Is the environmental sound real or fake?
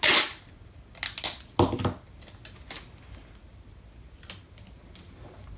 real